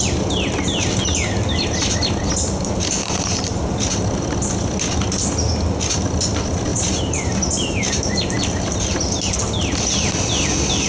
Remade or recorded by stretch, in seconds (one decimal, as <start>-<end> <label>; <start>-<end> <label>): 0.0-6.7 recorded; 6.7-8.7 remade; 8.7-10.9 recorded